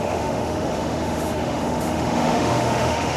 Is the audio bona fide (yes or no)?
no